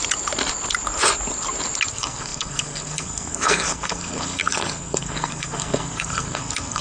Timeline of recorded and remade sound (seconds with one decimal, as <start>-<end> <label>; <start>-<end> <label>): 0.0-1.9 recorded; 1.9-6.8 remade